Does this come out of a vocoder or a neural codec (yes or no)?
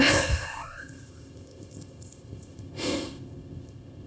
yes